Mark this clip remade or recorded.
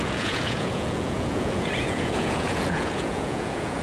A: remade